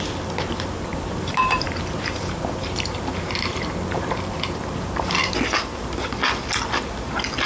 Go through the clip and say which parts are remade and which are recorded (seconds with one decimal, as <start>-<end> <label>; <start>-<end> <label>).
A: 0.0-0.9 recorded; 0.9-4.1 remade; 4.1-7.5 recorded